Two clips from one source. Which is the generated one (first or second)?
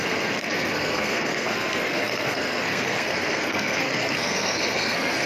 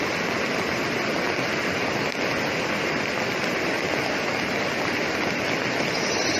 first